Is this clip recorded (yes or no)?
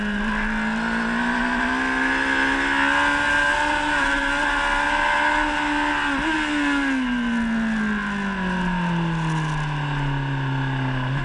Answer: yes